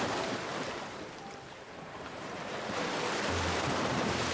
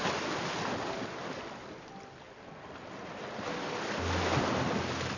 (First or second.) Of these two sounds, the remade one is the first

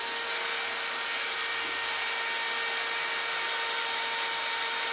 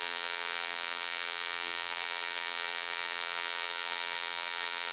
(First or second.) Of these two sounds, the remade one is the second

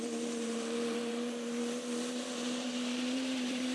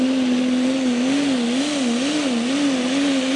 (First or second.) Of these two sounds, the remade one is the first